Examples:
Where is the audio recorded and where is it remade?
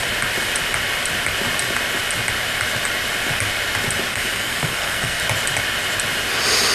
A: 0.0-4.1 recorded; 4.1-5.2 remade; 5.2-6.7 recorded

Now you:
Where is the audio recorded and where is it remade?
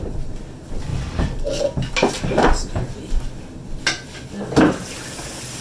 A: 0.0-5.6 recorded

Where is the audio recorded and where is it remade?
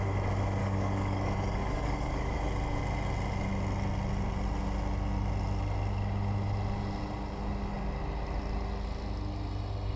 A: 0.0-0.6 recorded; 0.6-2.4 remade; 2.4-10.0 recorded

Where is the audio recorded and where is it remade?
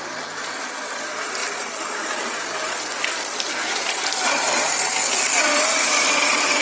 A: 0.0-1.4 recorded; 1.4-4.5 remade; 4.5-6.6 recorded